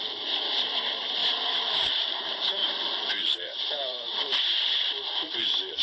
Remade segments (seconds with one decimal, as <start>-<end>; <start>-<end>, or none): 0.0-1.2; 1.7-2.6; 3.1-5.8